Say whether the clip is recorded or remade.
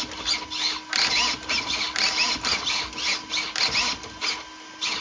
recorded